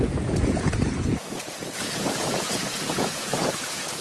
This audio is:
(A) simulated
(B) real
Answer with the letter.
A